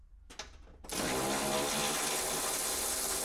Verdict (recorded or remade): recorded